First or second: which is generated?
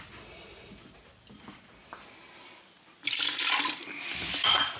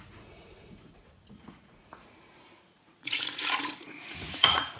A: second